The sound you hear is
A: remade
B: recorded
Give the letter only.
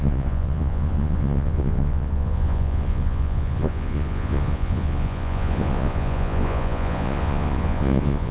A